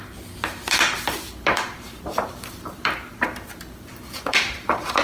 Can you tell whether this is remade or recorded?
remade